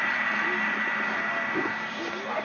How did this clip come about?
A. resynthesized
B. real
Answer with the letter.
B